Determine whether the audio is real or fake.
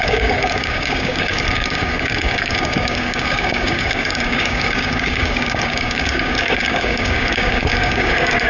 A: fake